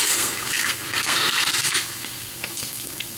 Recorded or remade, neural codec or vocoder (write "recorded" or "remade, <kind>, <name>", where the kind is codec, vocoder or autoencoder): remade, codec, SNAC